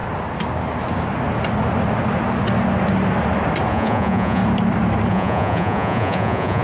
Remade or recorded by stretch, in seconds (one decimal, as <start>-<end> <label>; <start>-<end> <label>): 0.0-3.7 recorded; 3.7-4.4 remade; 4.4-5.1 recorded; 5.1-6.6 remade